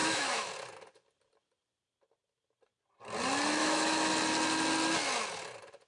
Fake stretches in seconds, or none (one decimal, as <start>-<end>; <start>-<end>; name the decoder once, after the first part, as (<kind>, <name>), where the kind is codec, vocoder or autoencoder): 0.0-0.5 (autoencoder, DAC-VAE); 3.6-4.1